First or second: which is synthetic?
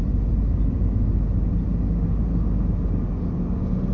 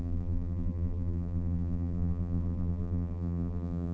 second